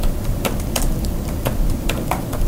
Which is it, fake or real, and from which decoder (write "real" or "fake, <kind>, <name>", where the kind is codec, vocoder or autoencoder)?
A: fake, vocoder, BigVGAN v2